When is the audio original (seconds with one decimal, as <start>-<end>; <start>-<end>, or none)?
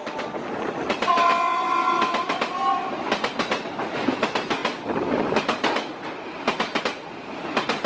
0.0-7.9